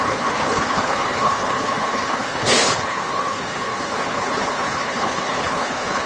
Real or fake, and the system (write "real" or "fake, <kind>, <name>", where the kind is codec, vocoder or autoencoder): fake, codec, HILCodec